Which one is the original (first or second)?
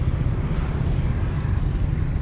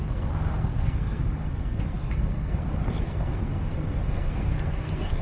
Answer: first